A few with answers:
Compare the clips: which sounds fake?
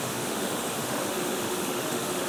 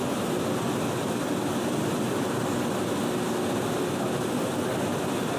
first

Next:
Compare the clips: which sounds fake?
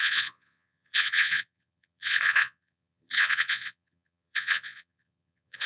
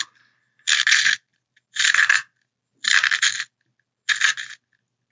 first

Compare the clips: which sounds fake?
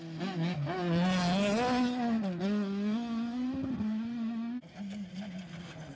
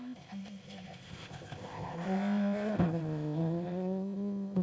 second